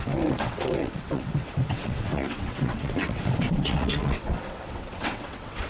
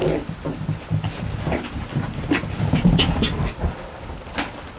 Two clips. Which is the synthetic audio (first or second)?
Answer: first